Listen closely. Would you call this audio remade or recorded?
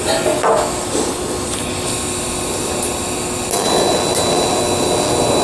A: recorded